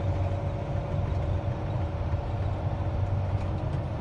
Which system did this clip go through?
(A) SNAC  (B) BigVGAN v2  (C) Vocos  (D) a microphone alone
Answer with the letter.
D